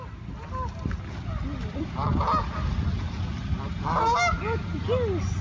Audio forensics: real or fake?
real